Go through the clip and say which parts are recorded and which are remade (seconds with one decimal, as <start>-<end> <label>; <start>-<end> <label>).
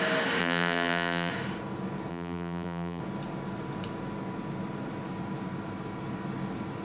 0.0-0.4 recorded; 0.4-1.3 remade; 1.3-2.1 recorded; 2.1-3.0 remade; 3.0-6.8 recorded